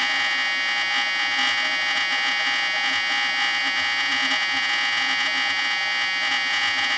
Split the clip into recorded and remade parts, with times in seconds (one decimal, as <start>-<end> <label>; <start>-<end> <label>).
0.0-7.0 remade